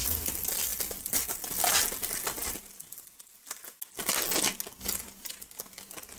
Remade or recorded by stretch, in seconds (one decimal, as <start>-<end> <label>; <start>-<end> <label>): 0.0-6.2 recorded